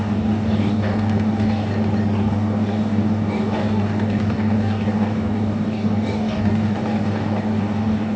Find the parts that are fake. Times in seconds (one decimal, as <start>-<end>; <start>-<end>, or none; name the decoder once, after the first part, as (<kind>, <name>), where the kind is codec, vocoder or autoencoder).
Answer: 0.0-1.7 (codec, DAC); 2.2-8.2